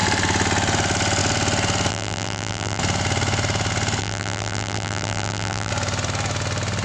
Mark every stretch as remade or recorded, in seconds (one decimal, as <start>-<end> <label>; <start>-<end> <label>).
0.0-1.9 recorded; 1.9-2.8 remade; 2.8-4.0 recorded; 4.0-5.7 remade; 5.7-6.8 recorded